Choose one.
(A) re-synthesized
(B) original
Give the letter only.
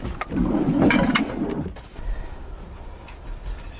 B